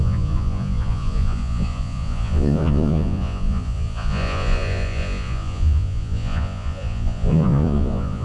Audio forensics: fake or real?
fake